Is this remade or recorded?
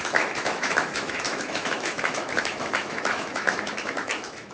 remade